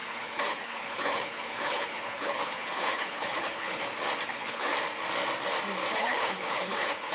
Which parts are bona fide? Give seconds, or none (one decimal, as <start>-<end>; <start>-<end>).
3.8-4.3; 4.7-5.9